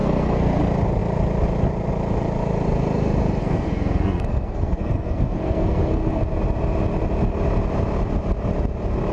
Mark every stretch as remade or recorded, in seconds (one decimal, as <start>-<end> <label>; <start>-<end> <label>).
0.0-0.6 remade; 0.6-3.4 recorded; 3.4-6.2 remade; 6.2-9.1 recorded